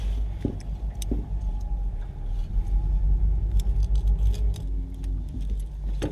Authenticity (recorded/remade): recorded